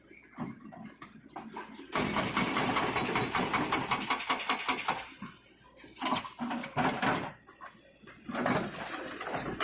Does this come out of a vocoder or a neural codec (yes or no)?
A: no